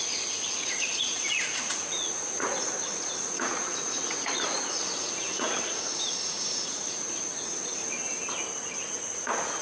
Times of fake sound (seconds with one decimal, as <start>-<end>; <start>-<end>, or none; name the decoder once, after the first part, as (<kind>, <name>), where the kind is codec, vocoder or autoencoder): 0.0-7.7 (vocoder, Vocos); 8.8-9.6